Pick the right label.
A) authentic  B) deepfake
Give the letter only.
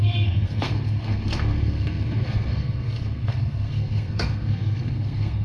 B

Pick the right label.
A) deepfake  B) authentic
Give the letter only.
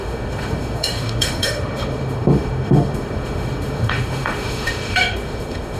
A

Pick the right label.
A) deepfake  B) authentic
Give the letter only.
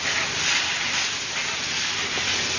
B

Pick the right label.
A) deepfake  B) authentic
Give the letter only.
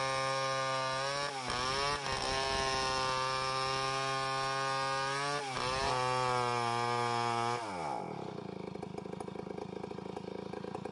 B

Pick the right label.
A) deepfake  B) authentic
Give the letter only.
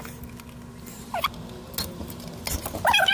B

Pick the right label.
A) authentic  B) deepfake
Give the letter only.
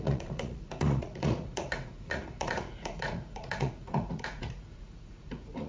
B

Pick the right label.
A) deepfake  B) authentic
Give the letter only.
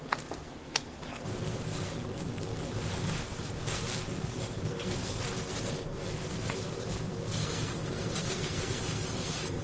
A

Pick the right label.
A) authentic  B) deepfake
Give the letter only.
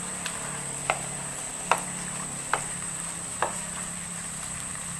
B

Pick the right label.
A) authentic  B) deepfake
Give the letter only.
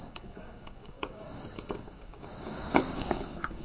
B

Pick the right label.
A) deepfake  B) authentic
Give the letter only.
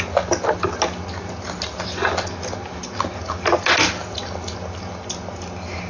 B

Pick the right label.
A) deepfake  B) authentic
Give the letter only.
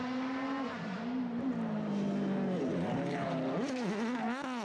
B